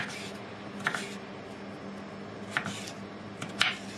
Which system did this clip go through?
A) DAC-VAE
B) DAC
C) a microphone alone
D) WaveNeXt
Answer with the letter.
C